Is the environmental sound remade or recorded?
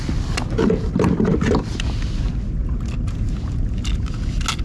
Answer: recorded